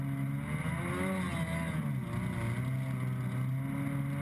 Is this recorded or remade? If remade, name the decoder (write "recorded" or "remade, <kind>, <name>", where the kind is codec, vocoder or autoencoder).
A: recorded